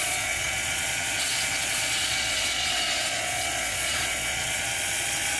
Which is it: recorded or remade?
remade